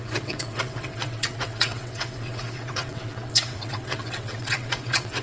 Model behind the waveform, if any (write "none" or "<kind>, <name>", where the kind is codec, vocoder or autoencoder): vocoder, WaveNeXt